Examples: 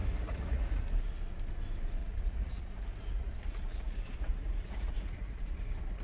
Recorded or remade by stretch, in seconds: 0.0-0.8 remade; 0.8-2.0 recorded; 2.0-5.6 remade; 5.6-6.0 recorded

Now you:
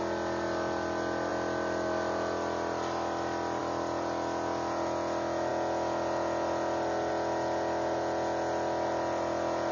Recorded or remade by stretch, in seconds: 0.0-9.7 recorded

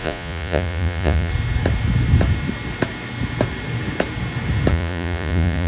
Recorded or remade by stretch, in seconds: 0.0-1.3 remade; 1.3-4.7 recorded; 4.7-5.7 remade